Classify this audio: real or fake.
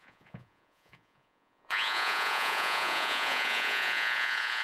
fake